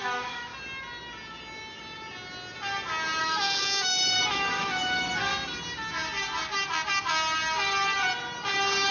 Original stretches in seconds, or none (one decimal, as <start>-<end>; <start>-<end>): 0.5-3.2; 5.3-8.9